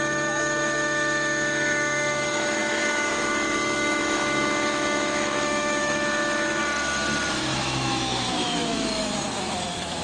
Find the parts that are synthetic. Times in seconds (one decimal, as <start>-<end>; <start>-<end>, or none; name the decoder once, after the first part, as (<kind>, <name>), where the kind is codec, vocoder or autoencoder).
0.0-6.6 (autoencoder, DAC-VAE); 7.3-10.0